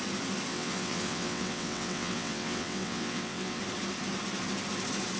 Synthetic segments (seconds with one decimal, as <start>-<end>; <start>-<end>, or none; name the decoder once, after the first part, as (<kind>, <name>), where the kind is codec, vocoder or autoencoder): 0.5-3.6 (vocoder, WaveNeXt)